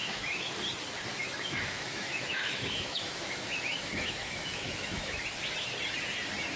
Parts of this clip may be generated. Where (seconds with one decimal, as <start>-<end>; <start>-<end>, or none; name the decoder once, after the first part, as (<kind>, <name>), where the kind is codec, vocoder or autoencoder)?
0.0-0.5 (autoencoder, DAC-VAE); 1.2-5.2